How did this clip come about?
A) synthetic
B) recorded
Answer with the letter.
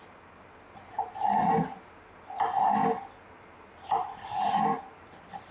B